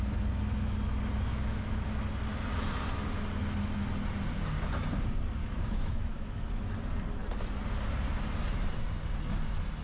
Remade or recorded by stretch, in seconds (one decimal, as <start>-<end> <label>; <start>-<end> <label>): 0.0-1.3 recorded; 1.3-2.0 remade; 2.0-5.4 recorded; 5.4-6.4 remade; 6.4-9.8 recorded